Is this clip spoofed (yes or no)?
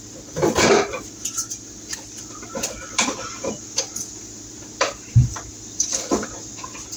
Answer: yes